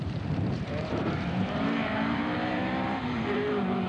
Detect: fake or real fake